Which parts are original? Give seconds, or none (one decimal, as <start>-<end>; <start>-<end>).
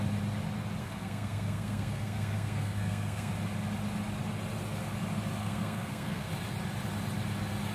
0.0-0.8; 3.3-5.4; 6.3-7.7